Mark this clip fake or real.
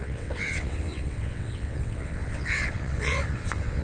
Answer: fake